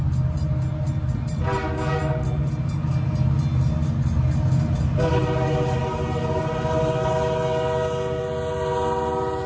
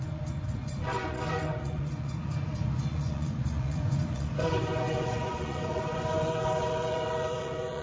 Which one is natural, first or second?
first